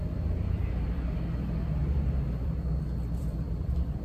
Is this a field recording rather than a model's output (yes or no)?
no